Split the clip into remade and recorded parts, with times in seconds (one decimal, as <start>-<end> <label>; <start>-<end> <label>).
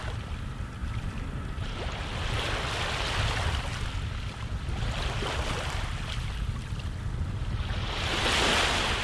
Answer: 0.0-0.8 recorded; 0.8-1.7 remade; 1.7-9.0 recorded